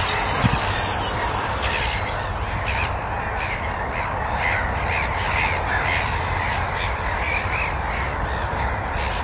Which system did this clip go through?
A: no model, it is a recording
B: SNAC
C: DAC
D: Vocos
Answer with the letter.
A